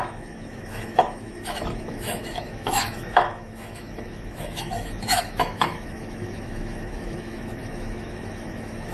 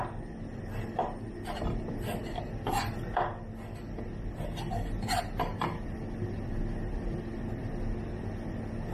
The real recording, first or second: second